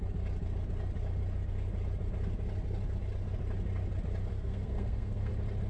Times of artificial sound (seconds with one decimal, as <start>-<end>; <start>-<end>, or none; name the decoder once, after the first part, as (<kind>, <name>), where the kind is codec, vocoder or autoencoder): 4.3-5.3 (codec, SNAC)